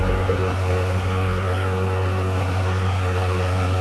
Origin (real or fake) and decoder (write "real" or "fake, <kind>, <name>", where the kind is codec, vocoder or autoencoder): fake, codec, SNAC